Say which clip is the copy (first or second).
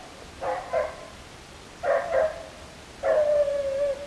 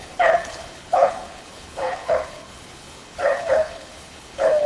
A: second